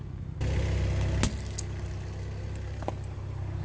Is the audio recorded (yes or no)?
yes